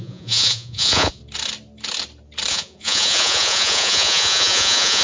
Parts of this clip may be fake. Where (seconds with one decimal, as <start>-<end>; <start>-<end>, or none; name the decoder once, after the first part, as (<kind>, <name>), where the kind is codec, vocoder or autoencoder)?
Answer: 0.0-1.2 (vocoder, Vocos); 2.5-5.0